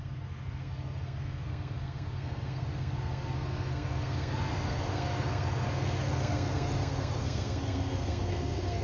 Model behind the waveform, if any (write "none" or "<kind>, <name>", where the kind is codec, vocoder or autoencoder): codec, SNAC